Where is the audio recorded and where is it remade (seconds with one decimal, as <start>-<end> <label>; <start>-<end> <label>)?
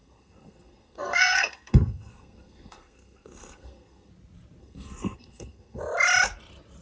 0.0-4.1 remade; 4.1-4.6 recorded; 4.6-5.8 remade; 5.8-6.8 recorded